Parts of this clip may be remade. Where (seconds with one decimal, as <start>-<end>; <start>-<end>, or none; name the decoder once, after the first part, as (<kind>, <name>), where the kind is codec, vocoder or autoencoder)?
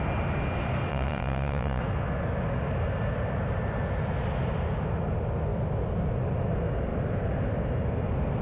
0.9-1.8 (vocoder, Vocos)